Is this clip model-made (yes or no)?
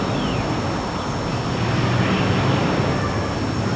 no